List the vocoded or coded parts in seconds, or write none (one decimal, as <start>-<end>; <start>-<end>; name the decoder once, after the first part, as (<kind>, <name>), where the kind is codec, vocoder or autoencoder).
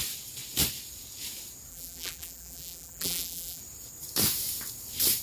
1.7-3.6 (vocoder, BigVGAN v2)